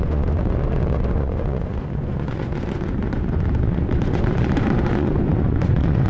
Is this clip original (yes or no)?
no